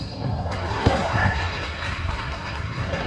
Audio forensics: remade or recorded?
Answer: remade